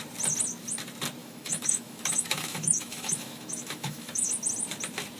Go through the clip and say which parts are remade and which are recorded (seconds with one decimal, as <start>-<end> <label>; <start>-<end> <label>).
0.0-1.2 recorded; 1.2-4.3 remade; 4.3-5.2 recorded